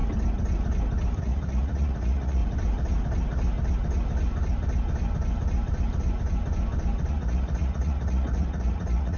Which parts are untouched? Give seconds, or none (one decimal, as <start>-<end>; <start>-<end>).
0.0-1.2; 2.4-7.1